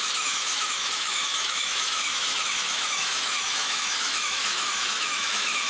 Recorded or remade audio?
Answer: remade